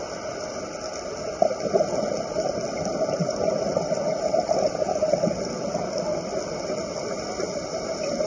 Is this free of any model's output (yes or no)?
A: yes